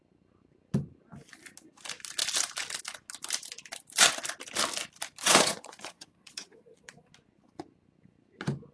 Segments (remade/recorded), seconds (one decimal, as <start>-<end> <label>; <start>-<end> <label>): 0.0-5.2 recorded; 5.2-7.1 remade; 7.1-8.7 recorded